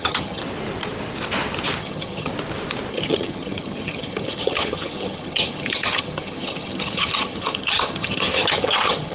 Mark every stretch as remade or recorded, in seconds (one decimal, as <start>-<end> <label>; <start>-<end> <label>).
0.0-0.4 remade; 0.4-1.8 recorded; 1.8-2.3 remade; 2.3-2.9 recorded; 2.9-9.1 remade